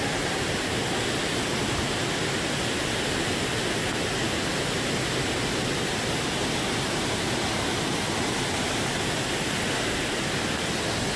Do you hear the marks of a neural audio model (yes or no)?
no